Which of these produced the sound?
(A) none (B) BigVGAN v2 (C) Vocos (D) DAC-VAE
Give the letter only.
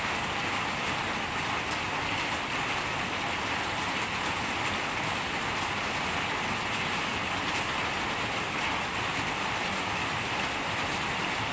A